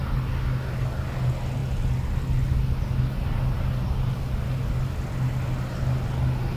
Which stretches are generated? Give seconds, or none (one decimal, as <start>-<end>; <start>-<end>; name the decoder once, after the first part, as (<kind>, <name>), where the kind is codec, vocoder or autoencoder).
none